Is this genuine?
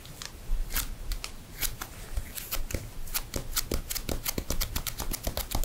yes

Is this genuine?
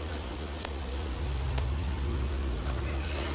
no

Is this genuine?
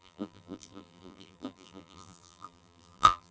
no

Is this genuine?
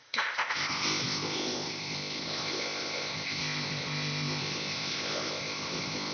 no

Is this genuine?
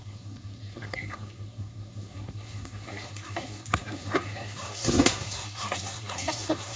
no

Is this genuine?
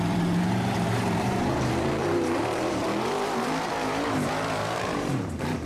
no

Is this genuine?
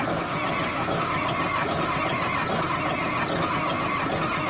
yes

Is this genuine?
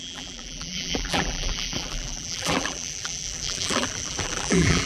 no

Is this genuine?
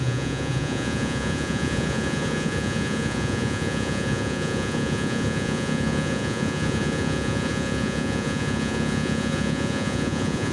no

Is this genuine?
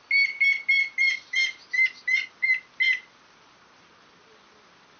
yes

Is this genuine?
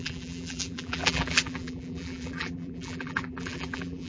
no